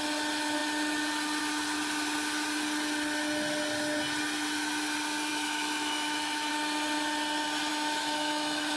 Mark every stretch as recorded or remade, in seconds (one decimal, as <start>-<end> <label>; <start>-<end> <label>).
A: 0.0-5.3 recorded; 5.3-6.5 remade; 6.5-7.7 recorded; 7.7-8.8 remade